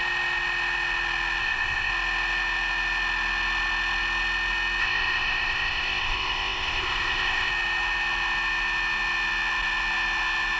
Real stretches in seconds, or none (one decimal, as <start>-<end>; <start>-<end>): 0.0-1.4; 1.9-4.8; 7.5-10.6